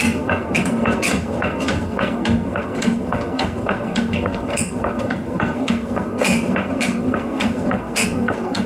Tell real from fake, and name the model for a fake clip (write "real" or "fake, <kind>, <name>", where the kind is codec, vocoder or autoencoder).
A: fake, codec, SNAC